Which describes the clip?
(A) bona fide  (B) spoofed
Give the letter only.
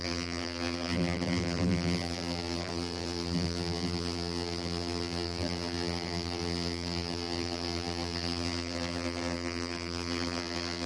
B